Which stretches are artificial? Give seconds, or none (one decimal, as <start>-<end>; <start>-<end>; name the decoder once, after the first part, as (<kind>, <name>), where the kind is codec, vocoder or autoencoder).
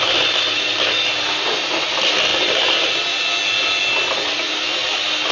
none